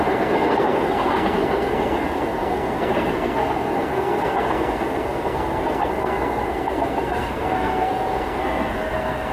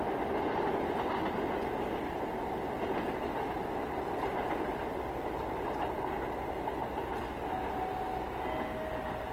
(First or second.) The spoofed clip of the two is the first